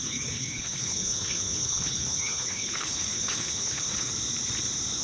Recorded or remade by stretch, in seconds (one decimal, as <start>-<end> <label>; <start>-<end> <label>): 0.0-4.1 remade; 4.1-5.0 recorded